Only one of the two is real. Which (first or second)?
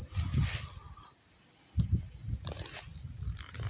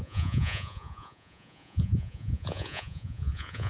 first